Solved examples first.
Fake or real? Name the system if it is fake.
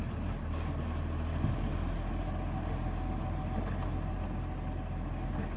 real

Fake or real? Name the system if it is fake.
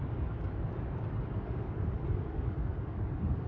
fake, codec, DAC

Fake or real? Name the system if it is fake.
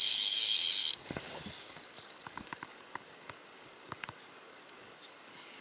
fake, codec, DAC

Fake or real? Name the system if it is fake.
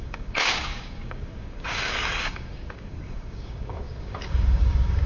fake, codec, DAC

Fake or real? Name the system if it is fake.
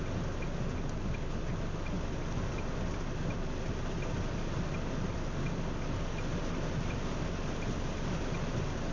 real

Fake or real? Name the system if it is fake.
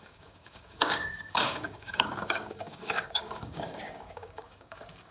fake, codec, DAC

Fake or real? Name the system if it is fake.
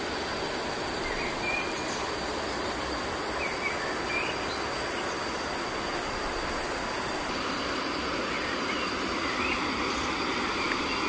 real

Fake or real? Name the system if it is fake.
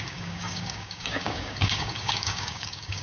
fake, codec, DAC